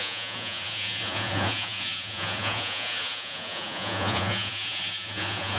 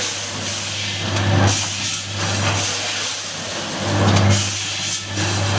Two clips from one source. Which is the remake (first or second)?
first